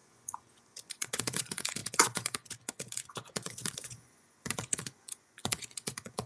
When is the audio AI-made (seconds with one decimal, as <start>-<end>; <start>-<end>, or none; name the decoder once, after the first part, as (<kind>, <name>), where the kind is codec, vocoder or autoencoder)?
0.0-6.3 (vocoder, Vocos)